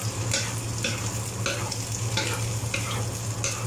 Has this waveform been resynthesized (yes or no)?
no